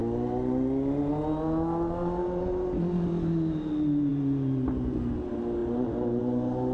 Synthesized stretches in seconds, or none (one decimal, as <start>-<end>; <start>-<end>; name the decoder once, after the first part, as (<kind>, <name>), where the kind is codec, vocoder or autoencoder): none